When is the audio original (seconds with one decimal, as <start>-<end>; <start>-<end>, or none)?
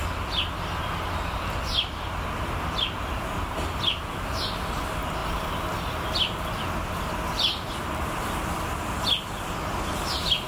0.0-10.5